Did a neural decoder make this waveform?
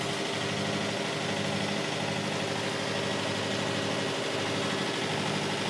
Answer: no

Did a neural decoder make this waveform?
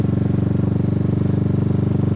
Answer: no